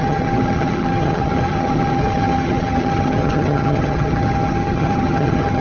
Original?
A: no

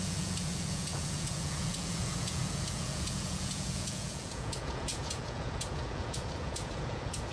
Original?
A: no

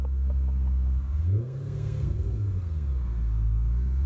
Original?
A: no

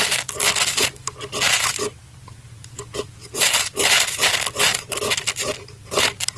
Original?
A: yes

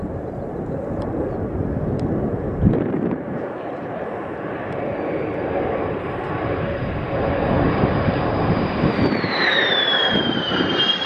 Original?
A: no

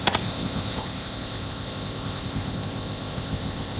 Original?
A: no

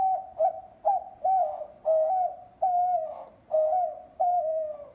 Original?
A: yes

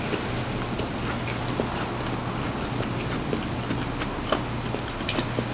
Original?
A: yes